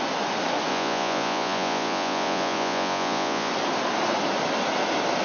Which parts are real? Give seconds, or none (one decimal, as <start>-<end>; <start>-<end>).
0.0-0.7; 3.5-5.2